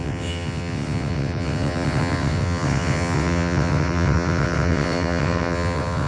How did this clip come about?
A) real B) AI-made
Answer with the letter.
B